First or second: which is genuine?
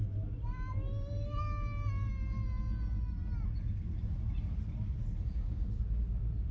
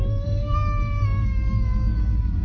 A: first